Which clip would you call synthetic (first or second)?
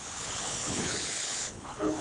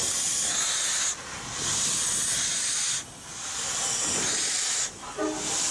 first